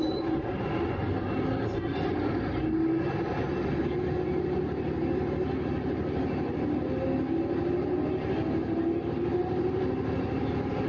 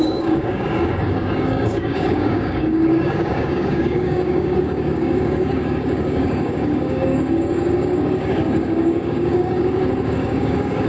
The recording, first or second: first